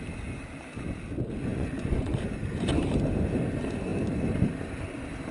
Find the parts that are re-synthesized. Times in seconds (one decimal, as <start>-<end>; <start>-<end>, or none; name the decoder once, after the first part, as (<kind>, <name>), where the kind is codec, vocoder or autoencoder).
1.5-2.1 (vocoder, Vocos)